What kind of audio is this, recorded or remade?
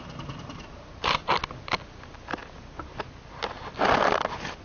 recorded